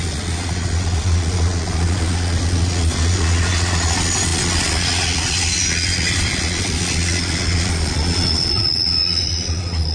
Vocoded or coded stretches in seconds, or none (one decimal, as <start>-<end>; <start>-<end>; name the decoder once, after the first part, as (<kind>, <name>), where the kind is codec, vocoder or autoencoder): 0.0-9.9 (vocoder, Vocos)